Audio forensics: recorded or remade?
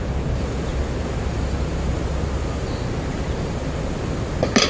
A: recorded